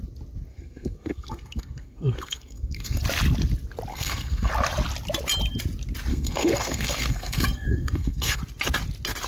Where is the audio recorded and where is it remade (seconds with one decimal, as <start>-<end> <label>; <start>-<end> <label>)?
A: 0.0-0.5 recorded; 0.5-3.0 remade; 3.0-3.9 recorded; 3.9-4.5 remade; 4.5-6.1 recorded; 6.1-8.4 remade; 8.4-9.3 recorded